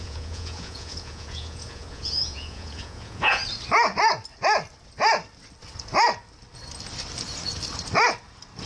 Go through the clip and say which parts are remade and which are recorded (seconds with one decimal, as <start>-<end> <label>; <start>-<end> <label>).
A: 0.0-3.4 remade; 3.4-8.7 recorded